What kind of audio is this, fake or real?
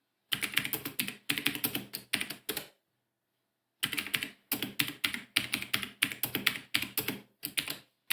real